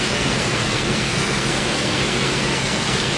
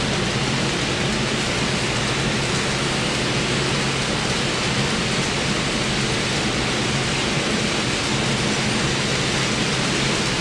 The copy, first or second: first